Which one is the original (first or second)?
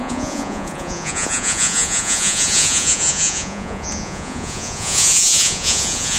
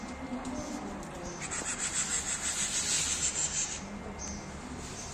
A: second